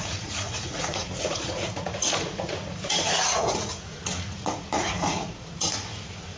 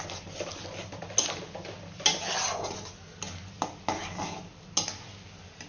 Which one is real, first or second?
second